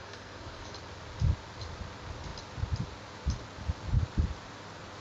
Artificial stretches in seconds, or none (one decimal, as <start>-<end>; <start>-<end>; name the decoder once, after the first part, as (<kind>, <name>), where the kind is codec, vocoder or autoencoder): 0.0-0.7 (codec, SNAC)

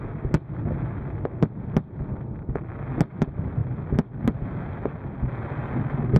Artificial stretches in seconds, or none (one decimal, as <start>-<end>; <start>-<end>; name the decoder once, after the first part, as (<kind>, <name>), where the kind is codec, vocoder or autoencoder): none

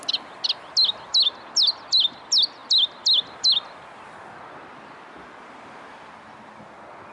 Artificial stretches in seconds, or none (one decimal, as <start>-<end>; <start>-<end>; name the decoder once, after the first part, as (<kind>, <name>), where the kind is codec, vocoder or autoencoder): none

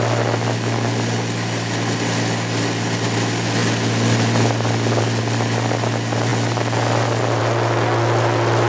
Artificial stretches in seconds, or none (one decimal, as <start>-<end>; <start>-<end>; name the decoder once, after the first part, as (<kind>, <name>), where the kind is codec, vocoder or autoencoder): none

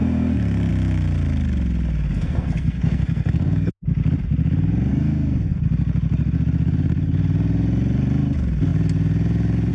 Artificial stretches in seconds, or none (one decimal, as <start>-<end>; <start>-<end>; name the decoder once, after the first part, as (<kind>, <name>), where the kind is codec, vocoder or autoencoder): 0.0-0.7 (codec, SNAC); 2.1-3.7; 4.9-5.6

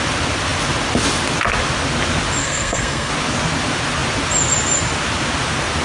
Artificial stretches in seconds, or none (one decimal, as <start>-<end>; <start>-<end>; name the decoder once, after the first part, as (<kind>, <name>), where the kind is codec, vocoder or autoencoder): 2.4-3.1 (codec, SNAC)